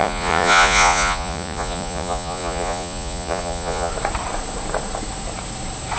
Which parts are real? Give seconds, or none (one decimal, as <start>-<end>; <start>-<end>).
3.9-6.0